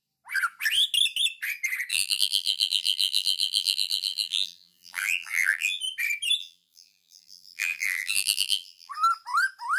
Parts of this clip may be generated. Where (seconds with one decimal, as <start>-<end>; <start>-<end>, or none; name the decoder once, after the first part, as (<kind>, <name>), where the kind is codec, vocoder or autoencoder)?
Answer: 1.9-5.8 (vocoder, BigVGAN v2); 6.4-8.9